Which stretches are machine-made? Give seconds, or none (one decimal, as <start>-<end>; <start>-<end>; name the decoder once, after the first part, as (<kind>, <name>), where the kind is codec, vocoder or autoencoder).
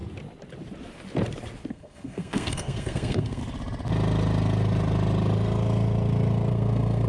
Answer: 1.7-3.4 (codec, SNAC); 6.5-7.1